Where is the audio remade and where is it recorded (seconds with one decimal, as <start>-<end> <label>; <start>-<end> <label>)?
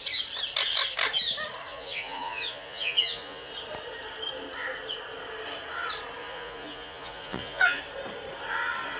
0.0-1.7 recorded; 1.7-3.5 remade; 3.5-6.2 recorded; 6.2-7.8 remade; 7.8-9.0 recorded